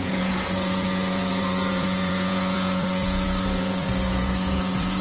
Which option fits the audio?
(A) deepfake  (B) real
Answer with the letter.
A